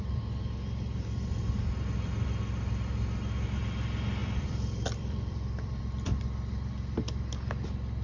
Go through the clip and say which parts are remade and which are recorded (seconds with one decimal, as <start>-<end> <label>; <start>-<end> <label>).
0.0-4.2 recorded; 4.2-5.8 remade; 5.8-8.0 recorded